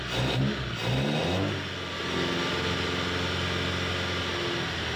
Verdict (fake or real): real